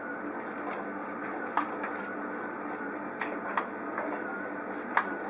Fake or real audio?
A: real